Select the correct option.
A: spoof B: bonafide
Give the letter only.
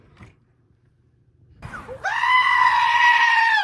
A